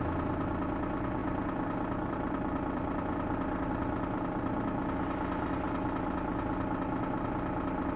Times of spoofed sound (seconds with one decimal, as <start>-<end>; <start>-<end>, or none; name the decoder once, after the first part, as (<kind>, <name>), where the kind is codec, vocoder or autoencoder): 1.2-3.7 (vocoder, BigVGAN v2)